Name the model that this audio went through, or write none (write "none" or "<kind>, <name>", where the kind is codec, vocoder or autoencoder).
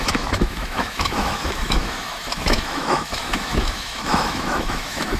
autoencoder, DAC-VAE